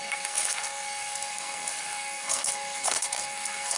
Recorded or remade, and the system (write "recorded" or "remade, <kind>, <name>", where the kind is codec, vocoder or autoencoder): remade, codec, SNAC